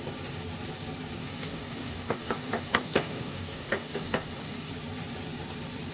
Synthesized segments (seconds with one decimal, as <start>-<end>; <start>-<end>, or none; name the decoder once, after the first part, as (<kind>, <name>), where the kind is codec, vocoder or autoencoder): 1.2-4.7 (codec, DAC)